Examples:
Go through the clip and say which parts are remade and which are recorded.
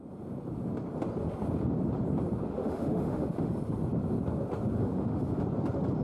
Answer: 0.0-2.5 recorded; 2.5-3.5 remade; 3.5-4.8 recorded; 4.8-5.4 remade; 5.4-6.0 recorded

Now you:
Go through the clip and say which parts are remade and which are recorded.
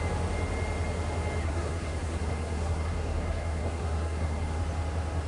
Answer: 0.0-1.4 recorded; 1.4-4.6 remade; 4.6-5.3 recorded